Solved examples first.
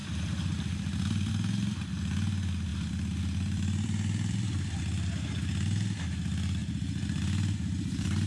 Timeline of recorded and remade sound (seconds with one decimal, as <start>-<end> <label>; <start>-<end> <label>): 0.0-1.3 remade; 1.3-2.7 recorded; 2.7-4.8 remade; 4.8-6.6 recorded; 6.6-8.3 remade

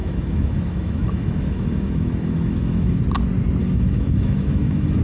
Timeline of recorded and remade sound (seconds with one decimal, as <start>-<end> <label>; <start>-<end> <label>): 0.0-3.0 remade; 3.0-3.6 recorded; 3.6-5.0 remade

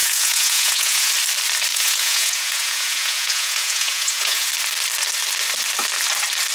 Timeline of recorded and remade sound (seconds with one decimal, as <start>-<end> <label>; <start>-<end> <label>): 0.0-1.1 remade; 1.1-1.7 recorded; 1.7-4.5 remade; 4.5-6.5 recorded